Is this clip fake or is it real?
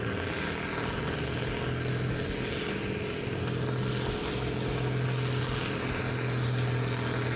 real